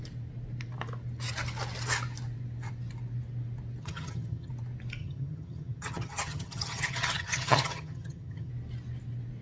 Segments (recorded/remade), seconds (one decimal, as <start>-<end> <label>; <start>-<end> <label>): 0.0-3.8 recorded; 3.8-4.5 remade; 4.5-5.0 recorded; 5.0-8.5 remade; 8.5-9.4 recorded